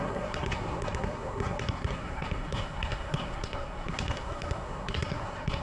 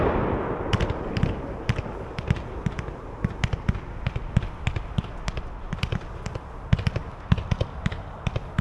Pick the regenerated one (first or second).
first